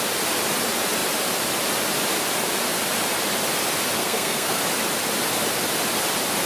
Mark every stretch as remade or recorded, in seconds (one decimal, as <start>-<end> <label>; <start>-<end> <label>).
0.0-4.0 recorded; 4.0-4.6 remade; 4.6-6.5 recorded